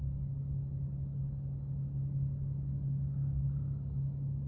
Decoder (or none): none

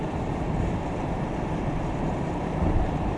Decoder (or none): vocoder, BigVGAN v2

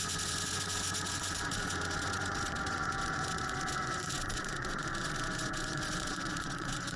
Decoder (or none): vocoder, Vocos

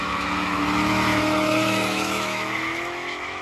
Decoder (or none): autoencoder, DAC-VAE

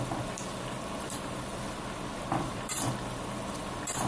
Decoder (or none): vocoder, BigVGAN v2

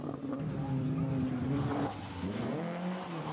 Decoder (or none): none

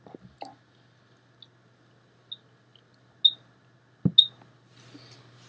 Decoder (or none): none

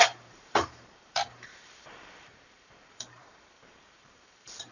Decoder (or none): vocoder, BigVGAN v2